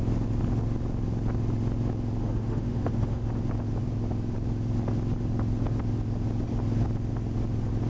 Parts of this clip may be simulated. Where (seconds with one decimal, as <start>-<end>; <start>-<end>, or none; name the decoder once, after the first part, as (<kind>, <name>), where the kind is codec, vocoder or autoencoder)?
2.2-3.3 (autoencoder, DAC-VAE)